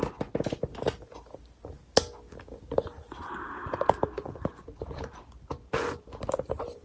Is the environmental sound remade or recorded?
recorded